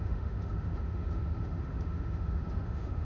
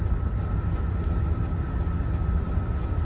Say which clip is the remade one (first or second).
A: first